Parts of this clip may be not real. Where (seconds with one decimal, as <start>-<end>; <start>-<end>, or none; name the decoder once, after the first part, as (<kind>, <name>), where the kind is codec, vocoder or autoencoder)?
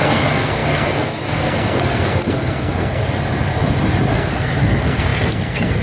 0.0-3.0 (codec, SNAC); 4.1-5.8